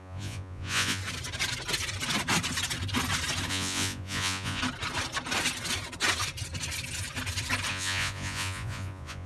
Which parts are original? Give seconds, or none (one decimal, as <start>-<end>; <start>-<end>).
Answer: 1.0-3.5; 4.6-7.7